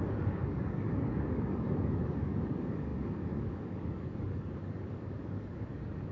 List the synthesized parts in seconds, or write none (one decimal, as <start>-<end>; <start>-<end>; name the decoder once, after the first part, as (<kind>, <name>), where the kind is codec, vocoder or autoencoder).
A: 0.0-6.1 (codec, DAC)